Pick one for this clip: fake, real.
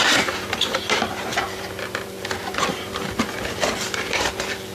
fake